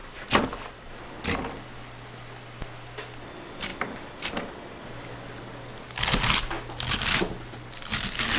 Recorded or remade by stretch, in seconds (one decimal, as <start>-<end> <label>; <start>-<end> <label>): 0.0-1.0 remade; 1.0-8.4 recorded